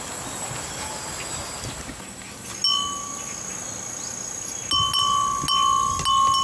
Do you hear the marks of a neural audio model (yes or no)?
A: no